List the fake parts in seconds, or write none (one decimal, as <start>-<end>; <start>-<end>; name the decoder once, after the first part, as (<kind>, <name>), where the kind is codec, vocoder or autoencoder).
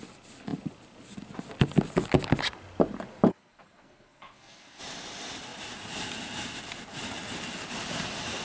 3.3-4.8 (codec, SNAC)